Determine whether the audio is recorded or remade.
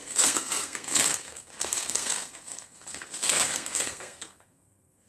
remade